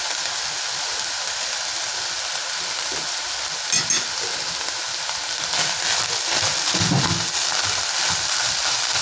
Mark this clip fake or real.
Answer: real